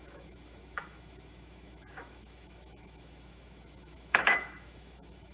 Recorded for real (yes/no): no